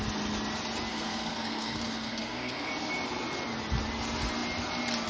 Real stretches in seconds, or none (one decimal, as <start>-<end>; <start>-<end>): 0.0-0.9; 2.7-5.1